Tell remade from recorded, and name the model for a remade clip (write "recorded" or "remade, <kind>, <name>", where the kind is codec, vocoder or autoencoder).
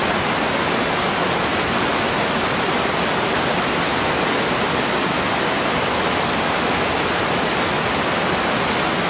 recorded